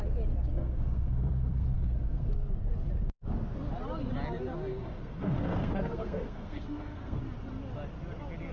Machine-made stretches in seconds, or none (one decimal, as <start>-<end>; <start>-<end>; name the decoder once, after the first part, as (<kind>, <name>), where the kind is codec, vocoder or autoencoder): 0.5-2.3 (codec, SNAC); 4.7-7.2